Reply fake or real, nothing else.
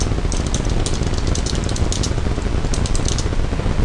real